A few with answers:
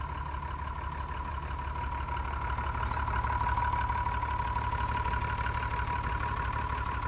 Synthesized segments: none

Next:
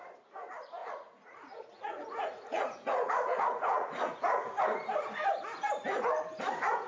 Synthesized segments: 0.8-4.6

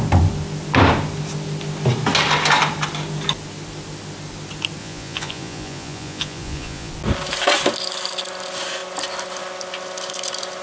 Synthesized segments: 4.8-6.9